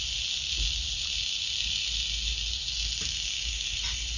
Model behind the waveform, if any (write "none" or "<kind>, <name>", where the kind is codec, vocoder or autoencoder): none